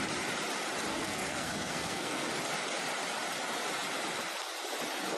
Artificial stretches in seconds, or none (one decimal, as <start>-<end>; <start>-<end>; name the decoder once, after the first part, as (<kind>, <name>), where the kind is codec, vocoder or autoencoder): 0.9-2.3 (codec, SNAC)